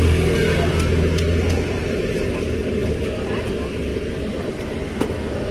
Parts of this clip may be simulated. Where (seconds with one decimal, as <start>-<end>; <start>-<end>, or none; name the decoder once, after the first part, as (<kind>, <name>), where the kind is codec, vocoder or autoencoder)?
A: 0.7-2.3 (vocoder, BigVGAN v2); 3.9-5.1